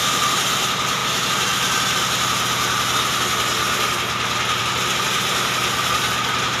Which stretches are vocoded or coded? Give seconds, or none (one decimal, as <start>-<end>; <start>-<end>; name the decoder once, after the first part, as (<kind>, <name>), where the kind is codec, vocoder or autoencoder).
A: none